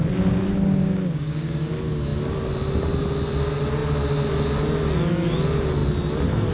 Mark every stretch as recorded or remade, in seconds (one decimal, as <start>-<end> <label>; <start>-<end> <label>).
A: 0.0-0.8 recorded; 0.8-1.7 remade; 1.7-6.5 recorded